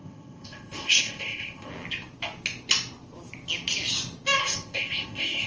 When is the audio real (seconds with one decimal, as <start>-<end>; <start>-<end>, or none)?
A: 1.7-4.4